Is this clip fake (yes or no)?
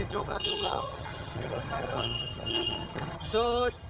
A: yes